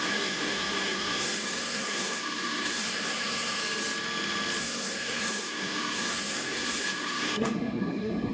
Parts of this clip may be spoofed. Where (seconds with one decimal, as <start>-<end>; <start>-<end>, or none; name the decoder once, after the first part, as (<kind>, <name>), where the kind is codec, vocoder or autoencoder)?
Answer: 0.0-3.6 (codec, SNAC); 4.6-8.3